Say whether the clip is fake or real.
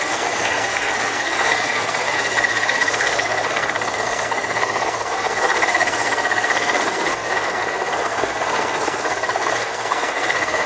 fake